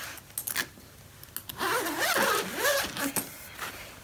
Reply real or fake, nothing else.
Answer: real